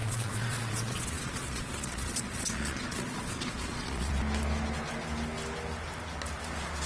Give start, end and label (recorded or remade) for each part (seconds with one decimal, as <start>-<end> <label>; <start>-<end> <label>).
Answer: 0.0-4.1 remade; 4.1-6.9 recorded

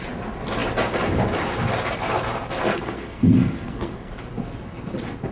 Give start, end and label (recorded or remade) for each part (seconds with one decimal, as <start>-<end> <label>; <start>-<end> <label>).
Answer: 0.0-2.7 recorded; 2.7-4.1 remade; 4.1-5.3 recorded

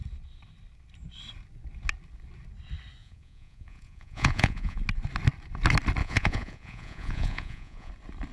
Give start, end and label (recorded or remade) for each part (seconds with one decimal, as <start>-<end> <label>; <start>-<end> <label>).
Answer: 0.0-3.0 recorded; 3.0-4.8 remade; 4.8-6.0 recorded; 6.0-7.9 remade; 7.9-8.3 recorded

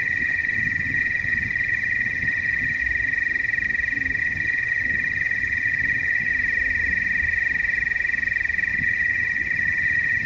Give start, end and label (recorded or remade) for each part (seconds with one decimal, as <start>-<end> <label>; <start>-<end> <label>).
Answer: 0.0-2.8 remade; 2.8-4.2 recorded; 4.2-6.3 remade; 6.3-8.7 recorded; 8.7-10.3 remade

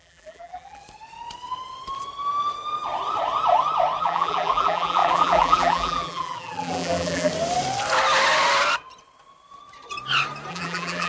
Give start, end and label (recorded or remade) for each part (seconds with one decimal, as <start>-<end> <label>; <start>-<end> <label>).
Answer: 0.0-0.8 remade; 0.8-4.0 recorded; 4.0-7.3 remade; 7.3-10.5 recorded; 10.5-11.1 remade